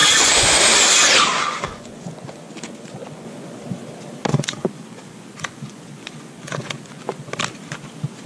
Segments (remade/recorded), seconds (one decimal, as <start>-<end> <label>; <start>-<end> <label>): 0.0-0.6 remade; 0.6-1.3 recorded; 1.3-3.6 remade; 3.6-4.3 recorded; 4.3-7.3 remade; 7.3-8.3 recorded